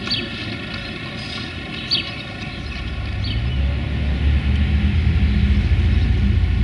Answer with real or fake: real